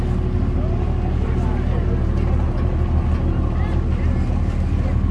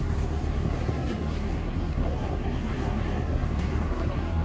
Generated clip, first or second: second